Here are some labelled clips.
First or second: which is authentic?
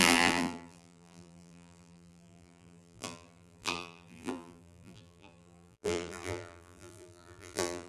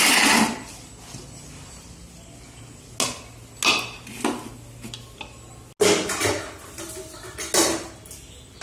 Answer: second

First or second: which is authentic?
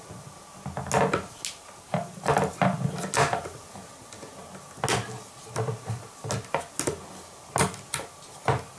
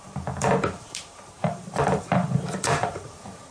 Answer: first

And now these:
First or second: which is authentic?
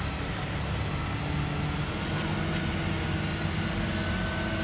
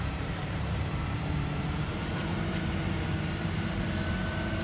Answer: first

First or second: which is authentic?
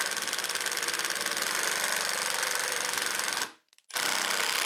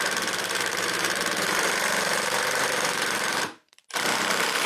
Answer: first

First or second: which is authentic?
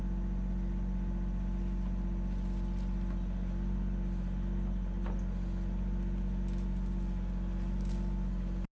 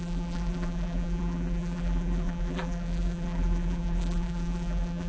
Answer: first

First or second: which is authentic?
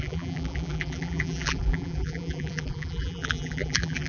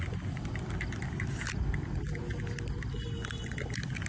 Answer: second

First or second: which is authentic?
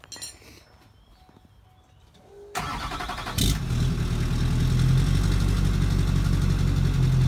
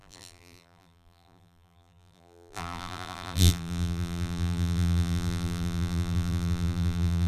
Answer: first